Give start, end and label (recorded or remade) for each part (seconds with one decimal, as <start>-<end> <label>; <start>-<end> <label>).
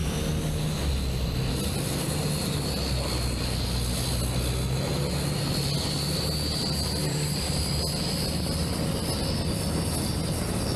0.0-6.6 recorded; 6.6-8.9 remade; 8.9-10.8 recorded